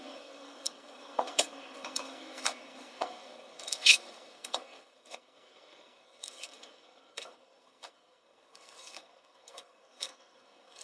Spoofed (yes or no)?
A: yes